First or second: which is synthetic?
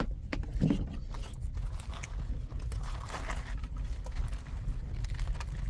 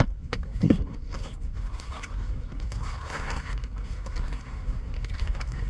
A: second